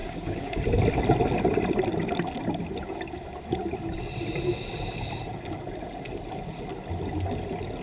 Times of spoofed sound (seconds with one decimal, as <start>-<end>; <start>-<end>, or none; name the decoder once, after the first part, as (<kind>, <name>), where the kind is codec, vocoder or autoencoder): 0.0-0.6 (codec, DAC)